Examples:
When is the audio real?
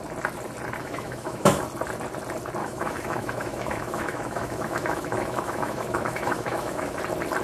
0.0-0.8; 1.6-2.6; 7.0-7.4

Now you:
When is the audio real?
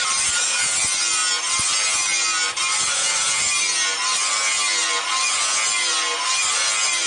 0.0-7.1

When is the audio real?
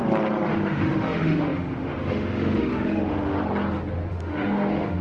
0.0-0.5; 3.4-4.1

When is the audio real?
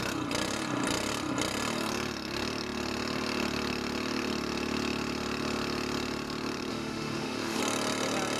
0.0-6.7; 7.6-8.4